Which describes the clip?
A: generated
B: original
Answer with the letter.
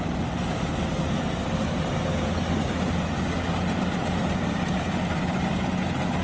B